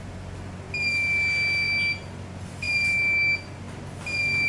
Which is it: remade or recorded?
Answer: recorded